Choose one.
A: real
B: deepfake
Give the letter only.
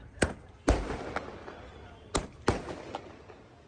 A